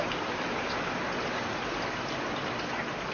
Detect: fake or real real